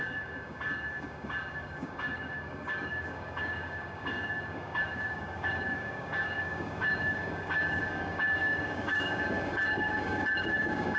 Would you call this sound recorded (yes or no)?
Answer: no